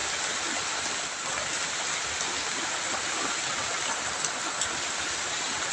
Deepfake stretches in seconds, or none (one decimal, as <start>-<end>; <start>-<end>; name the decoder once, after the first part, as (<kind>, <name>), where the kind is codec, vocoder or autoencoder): 3.4-3.8 (vocoder, WaveNeXt); 5.3-5.7